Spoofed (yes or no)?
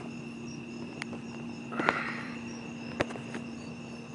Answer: yes